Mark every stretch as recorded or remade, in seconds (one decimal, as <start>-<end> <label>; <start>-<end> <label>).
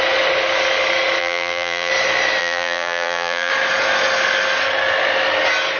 0.0-1.2 recorded; 1.2-1.9 remade; 1.9-2.4 recorded; 2.4-3.5 remade; 3.5-5.8 recorded